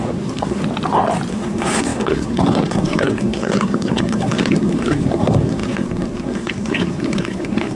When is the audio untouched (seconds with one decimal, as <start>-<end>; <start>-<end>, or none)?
0.6-1.3